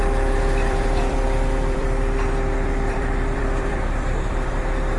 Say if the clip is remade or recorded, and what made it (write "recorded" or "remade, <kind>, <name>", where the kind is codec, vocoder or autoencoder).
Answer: remade, vocoder, BigVGAN v2